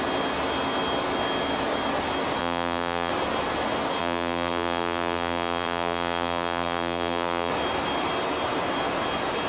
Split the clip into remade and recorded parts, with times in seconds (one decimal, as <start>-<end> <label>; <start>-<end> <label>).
0.0-2.4 recorded; 2.4-3.1 remade; 3.1-4.0 recorded; 4.0-7.5 remade; 7.5-9.5 recorded